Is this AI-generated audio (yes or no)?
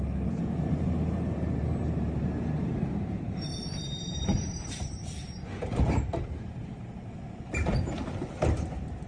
yes